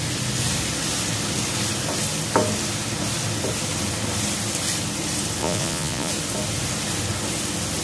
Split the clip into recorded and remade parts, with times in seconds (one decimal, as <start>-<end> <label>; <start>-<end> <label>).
0.0-5.4 recorded; 5.4-6.1 remade; 6.1-7.8 recorded